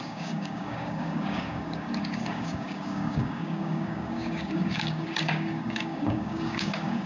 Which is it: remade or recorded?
remade